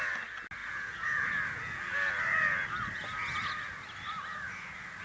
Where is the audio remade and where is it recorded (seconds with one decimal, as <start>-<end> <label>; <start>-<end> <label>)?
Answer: 0.0-5.0 recorded